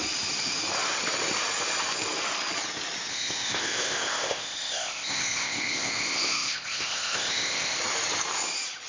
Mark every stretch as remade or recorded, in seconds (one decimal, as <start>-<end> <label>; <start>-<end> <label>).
0.0-3.1 recorded; 3.1-7.8 remade; 7.8-8.9 recorded